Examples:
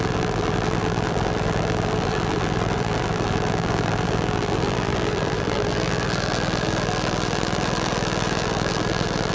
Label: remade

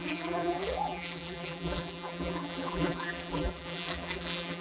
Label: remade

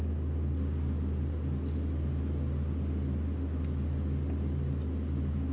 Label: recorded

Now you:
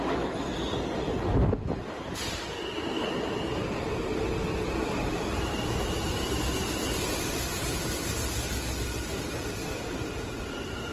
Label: recorded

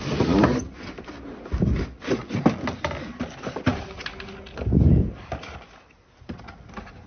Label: recorded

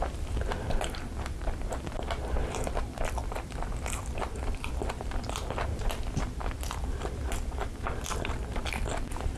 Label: remade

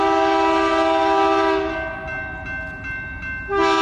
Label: recorded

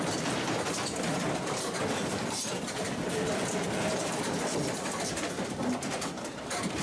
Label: remade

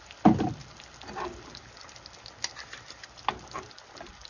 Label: recorded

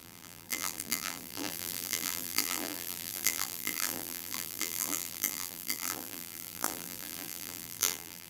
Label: remade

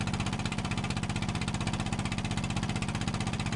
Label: remade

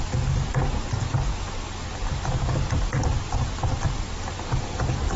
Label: remade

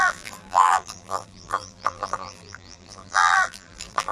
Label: remade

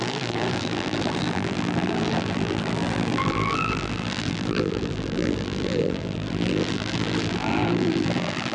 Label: remade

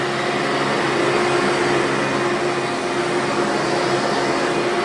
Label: recorded